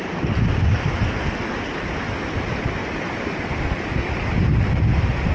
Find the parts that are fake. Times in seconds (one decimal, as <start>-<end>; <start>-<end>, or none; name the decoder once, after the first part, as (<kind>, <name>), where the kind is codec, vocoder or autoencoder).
none